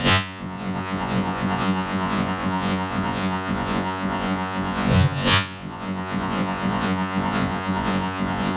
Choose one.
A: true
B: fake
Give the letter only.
B